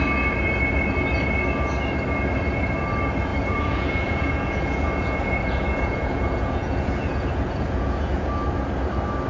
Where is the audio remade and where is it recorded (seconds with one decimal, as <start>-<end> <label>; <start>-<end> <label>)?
0.0-3.3 recorded; 3.3-8.3 remade; 8.3-9.3 recorded